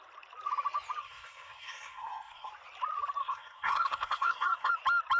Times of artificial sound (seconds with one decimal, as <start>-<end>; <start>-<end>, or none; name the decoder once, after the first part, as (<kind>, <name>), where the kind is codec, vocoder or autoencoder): 1.0-2.5 (codec, SNAC); 3.2-4.7